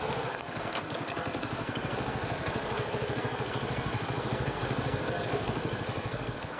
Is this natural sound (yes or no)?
no